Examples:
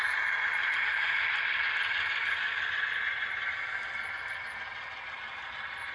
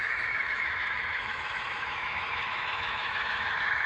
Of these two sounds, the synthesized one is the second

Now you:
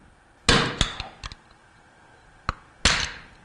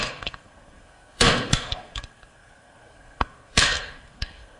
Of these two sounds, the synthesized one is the second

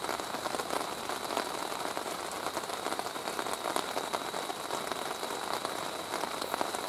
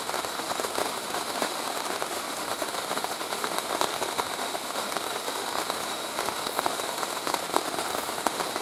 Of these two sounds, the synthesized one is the second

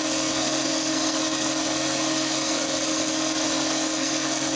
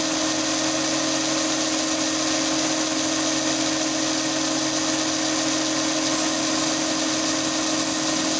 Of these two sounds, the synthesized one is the first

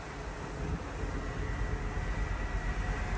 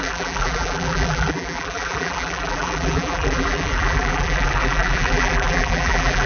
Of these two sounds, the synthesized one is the second